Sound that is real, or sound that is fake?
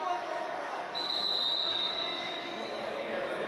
fake